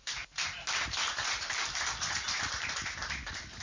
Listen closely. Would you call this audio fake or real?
fake